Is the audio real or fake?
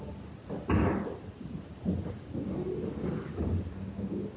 real